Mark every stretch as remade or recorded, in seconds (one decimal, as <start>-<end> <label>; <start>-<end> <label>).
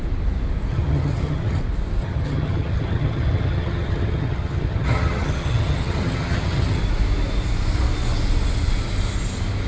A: 0.0-0.7 recorded; 0.7-1.6 remade; 1.6-2.0 recorded; 2.0-6.8 remade; 6.8-9.7 recorded